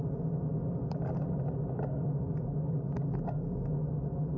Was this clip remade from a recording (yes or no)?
no